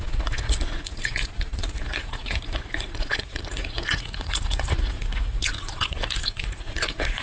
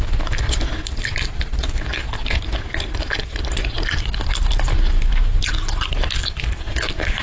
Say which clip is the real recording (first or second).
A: second